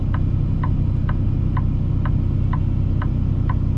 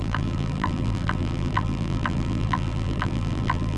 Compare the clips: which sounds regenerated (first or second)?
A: second